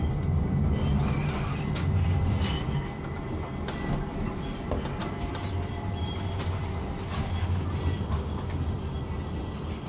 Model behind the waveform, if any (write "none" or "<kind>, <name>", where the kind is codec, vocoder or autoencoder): none